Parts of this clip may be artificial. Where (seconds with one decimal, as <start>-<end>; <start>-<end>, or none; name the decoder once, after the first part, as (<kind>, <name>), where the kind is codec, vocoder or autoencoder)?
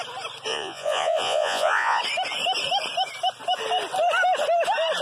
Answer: 0.5-2.0 (vocoder, Vocos)